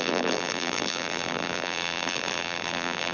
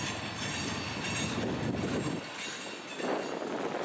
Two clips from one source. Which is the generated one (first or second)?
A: first